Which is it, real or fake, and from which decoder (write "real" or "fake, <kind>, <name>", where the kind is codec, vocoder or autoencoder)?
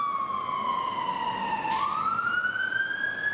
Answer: real